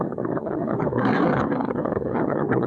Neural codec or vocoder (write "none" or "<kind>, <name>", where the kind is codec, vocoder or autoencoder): codec, SNAC